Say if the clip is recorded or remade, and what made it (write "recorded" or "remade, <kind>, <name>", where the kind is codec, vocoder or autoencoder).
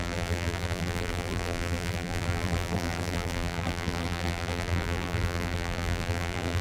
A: remade, vocoder, BigVGAN v2